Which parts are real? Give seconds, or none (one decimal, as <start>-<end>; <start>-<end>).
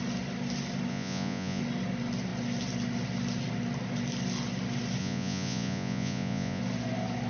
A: 0.0-0.9; 1.6-5.0; 6.6-7.3